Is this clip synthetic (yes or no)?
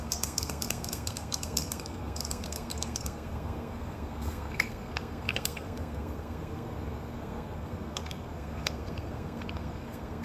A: yes